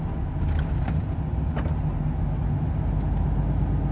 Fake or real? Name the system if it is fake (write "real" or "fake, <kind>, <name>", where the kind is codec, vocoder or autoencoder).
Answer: real